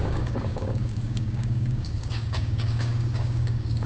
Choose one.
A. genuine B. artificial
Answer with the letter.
B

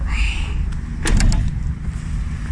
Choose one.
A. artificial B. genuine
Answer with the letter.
B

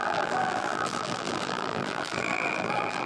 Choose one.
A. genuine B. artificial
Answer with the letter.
B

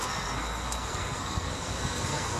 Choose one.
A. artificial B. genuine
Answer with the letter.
A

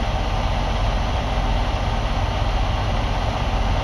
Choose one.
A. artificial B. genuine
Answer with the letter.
B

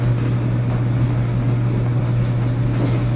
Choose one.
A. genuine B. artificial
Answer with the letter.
A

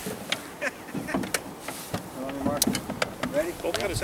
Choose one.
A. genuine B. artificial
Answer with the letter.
A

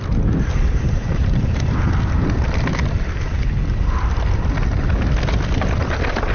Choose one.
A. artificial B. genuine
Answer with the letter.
B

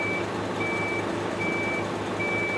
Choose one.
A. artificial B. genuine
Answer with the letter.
B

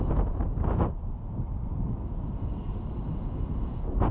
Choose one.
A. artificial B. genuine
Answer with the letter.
B